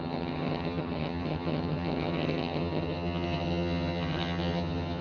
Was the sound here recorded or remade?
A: remade